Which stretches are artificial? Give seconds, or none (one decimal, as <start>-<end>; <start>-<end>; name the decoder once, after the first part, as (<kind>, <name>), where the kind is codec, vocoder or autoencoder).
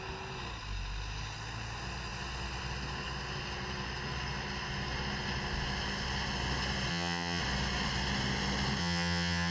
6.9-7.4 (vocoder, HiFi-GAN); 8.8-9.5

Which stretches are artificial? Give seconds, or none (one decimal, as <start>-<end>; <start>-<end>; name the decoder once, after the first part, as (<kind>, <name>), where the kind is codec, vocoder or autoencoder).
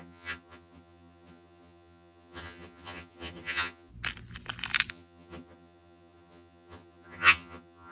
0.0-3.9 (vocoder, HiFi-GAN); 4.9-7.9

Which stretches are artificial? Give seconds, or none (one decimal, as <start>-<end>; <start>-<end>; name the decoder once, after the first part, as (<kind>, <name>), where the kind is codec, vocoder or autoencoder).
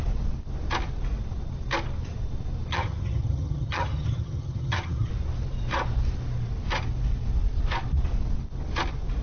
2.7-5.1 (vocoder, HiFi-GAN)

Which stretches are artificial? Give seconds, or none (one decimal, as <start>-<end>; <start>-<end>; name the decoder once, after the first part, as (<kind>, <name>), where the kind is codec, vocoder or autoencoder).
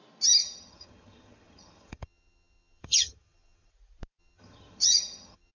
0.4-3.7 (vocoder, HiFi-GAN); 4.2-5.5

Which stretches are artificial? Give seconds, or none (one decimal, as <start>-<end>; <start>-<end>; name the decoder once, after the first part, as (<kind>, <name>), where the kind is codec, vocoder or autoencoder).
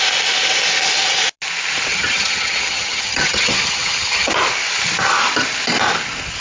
1.9-4.3 (vocoder, HiFi-GAN)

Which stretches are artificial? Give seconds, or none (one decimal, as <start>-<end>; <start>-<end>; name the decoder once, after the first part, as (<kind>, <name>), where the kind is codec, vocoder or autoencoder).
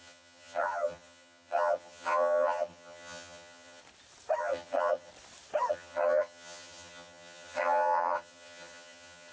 0.0-3.8 (vocoder, HiFi-GAN); 4.4-5.1; 5.7-9.3